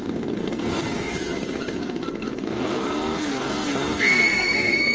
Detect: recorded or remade remade